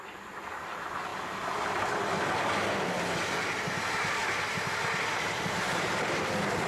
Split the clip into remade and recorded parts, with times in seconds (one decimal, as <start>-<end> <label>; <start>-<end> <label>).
0.0-4.2 recorded; 4.2-6.3 remade; 6.3-6.7 recorded